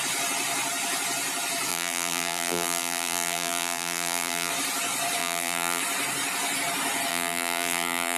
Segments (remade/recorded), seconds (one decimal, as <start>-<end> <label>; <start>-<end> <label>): 0.0-1.7 recorded; 1.7-4.5 remade; 4.5-5.2 recorded; 5.2-5.8 remade; 5.8-7.1 recorded; 7.1-8.2 remade